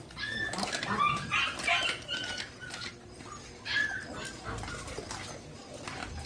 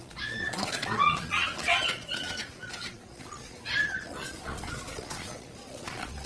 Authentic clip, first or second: first